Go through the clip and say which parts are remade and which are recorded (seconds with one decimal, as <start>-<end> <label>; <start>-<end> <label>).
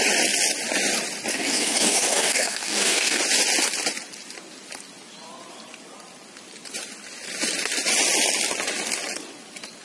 0.0-1.3 recorded; 1.3-3.2 remade; 3.2-9.8 recorded